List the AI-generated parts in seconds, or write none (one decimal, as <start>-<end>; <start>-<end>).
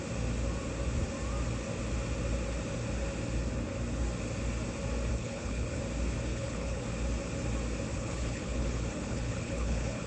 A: 5.1-5.8; 6.3-6.8; 7.9-10.1